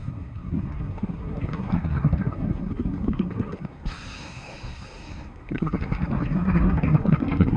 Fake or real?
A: fake